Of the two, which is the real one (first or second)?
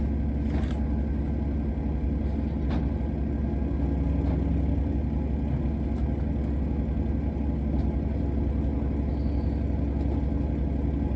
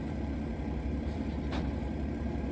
first